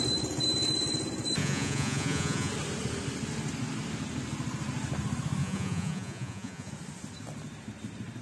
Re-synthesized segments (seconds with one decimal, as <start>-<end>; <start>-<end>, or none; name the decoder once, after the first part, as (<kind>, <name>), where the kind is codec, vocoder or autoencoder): 1.4-2.5 (vocoder, Vocos); 5.4-6.7

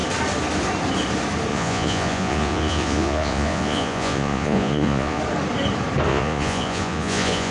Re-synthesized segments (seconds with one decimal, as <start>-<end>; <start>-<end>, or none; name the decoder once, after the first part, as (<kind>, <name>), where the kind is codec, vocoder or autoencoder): 1.5-5.2 (vocoder, Vocos); 6.1-7.5

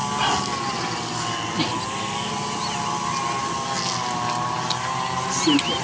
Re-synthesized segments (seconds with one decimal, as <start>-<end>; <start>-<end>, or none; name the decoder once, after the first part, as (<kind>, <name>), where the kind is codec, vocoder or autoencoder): none